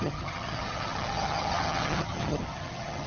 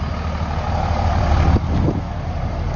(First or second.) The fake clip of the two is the first